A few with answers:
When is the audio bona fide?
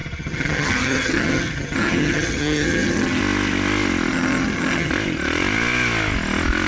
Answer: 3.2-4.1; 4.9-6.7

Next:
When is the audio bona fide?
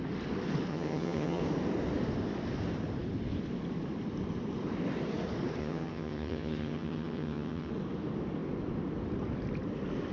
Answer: 0.0-0.7; 1.4-5.6; 7.7-10.1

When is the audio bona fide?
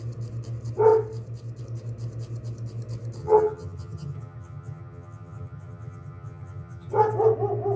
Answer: 0.0-3.2; 6.9-7.8